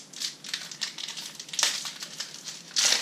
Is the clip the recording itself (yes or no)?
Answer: yes